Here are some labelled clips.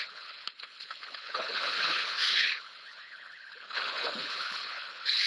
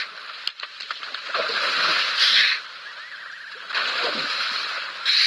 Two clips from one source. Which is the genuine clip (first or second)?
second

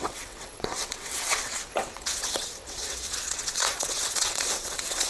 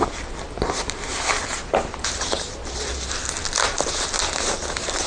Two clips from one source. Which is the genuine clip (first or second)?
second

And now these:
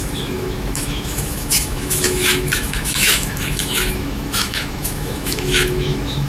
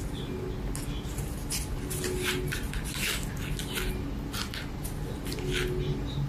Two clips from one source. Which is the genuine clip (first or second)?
second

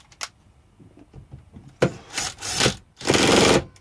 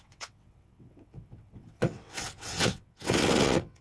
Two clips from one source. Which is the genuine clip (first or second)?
first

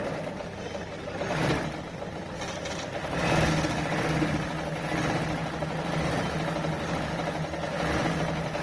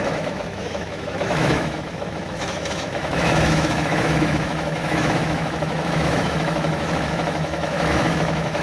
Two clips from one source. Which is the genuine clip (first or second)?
first